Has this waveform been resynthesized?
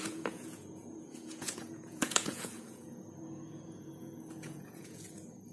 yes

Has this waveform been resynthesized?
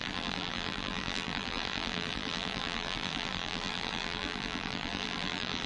yes